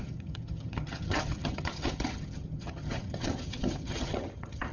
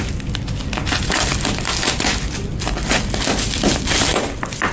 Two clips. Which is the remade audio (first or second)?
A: first